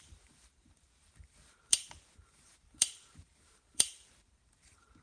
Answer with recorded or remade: remade